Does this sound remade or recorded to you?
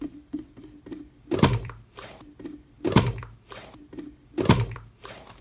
remade